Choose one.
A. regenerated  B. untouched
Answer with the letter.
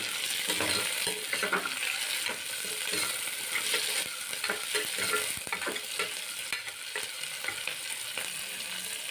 B